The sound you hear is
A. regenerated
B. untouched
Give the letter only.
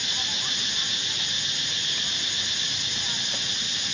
B